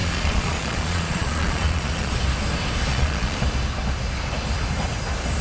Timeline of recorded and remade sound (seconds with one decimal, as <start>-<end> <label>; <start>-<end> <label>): 0.0-2.1 remade; 2.1-2.9 recorded; 2.9-3.4 remade; 3.4-5.4 recorded